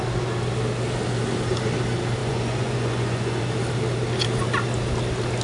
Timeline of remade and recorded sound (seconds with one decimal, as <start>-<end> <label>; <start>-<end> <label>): 0.0-2.2 recorded; 2.2-3.4 remade; 3.4-5.4 recorded